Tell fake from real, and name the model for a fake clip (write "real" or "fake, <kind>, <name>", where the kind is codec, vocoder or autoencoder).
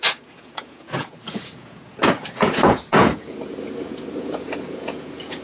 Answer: fake, vocoder, Vocos